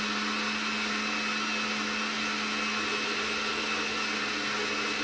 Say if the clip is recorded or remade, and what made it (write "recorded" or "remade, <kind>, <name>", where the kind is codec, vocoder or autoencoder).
recorded